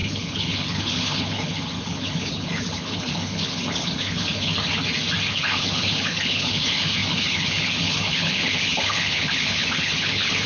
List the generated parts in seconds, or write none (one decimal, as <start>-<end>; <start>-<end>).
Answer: 0.0-4.5; 5.3-10.5